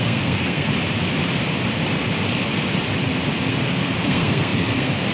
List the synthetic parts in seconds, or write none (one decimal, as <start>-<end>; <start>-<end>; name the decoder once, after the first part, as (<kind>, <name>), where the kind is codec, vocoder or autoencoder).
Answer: 0.0-0.7 (codec, SNAC); 3.5-5.1